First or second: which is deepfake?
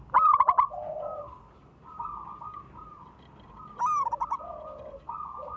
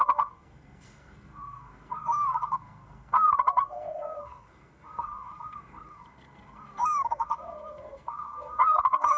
second